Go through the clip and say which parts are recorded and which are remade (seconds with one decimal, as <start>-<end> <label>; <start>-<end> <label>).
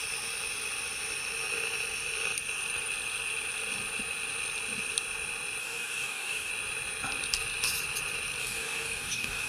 0.0-5.6 recorded; 5.6-6.5 remade; 6.5-8.4 recorded; 8.4-9.5 remade